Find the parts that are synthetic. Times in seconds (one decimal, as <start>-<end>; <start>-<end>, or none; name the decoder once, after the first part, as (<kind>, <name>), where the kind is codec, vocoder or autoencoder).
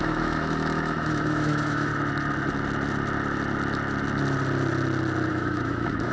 0.0-1.9 (autoencoder, DAC-VAE); 5.3-6.1